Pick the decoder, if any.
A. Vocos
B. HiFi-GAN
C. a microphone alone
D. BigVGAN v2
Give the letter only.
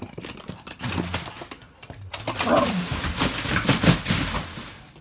C